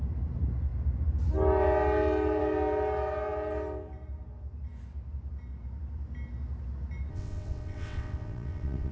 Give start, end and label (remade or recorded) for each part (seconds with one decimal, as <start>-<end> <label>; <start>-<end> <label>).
0.0-7.1 recorded; 7.1-8.9 remade